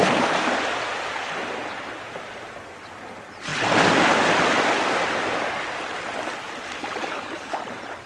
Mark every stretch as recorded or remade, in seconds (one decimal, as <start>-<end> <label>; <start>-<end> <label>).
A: 0.0-7.0 recorded; 7.0-7.6 remade; 7.6-8.1 recorded